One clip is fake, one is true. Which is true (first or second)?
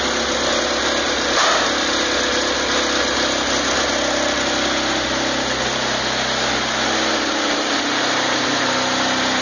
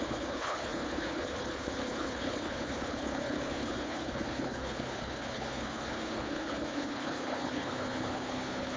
first